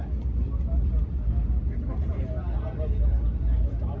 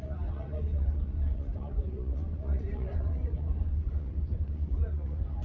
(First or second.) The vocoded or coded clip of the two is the second